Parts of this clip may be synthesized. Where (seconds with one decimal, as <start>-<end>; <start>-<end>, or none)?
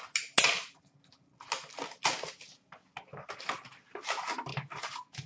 none